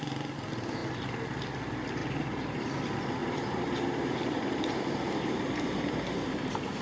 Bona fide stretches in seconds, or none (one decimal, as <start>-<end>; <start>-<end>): 0.0-2.0; 2.7-3.2